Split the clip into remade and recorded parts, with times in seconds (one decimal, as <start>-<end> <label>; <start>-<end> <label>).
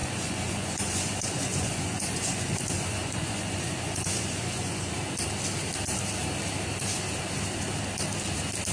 0.0-4.9 remade; 4.9-8.7 recorded